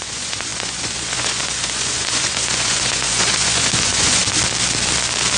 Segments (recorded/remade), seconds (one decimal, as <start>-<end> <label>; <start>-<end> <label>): 0.0-4.2 remade; 4.2-5.4 recorded